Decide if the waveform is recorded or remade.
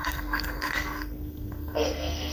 remade